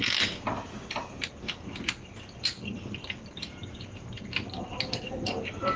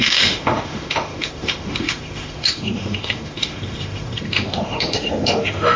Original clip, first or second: first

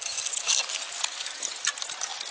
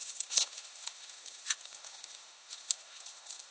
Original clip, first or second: first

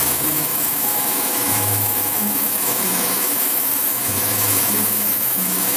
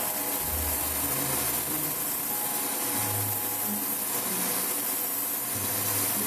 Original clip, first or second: second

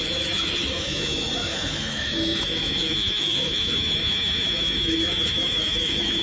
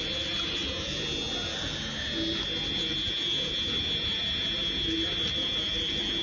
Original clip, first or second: second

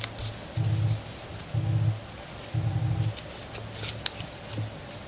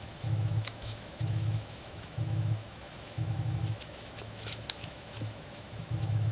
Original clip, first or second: first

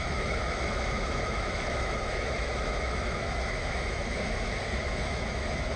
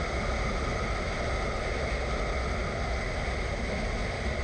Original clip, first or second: second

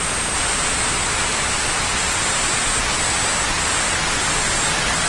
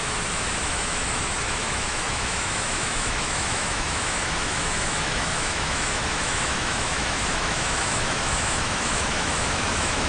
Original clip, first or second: first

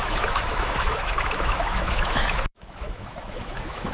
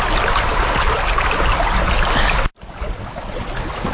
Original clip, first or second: second